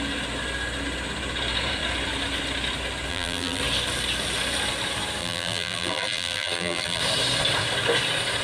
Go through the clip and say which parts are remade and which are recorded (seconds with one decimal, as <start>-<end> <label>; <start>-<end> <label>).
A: 0.0-3.1 recorded; 3.1-3.6 remade; 3.6-5.2 recorded; 5.2-7.0 remade; 7.0-8.4 recorded